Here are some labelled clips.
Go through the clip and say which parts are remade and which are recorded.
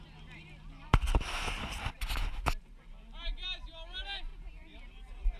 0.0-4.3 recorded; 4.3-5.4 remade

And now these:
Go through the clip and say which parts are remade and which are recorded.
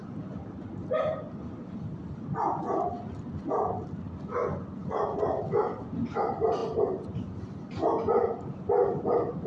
0.0-9.5 recorded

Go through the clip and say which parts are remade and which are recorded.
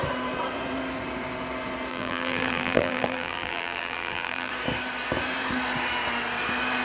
0.0-1.9 recorded; 1.9-4.5 remade; 4.5-6.8 recorded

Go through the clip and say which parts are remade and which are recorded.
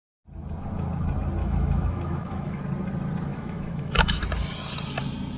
0.0-1.4 recorded; 1.4-2.6 remade; 2.6-3.3 recorded; 3.3-4.2 remade; 4.2-5.4 recorded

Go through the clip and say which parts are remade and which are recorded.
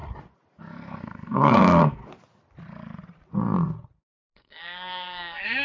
0.0-0.6 recorded; 0.6-2.0 remade; 2.0-4.1 recorded; 4.1-5.6 remade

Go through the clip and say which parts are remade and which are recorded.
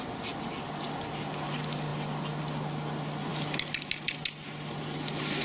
0.0-5.4 recorded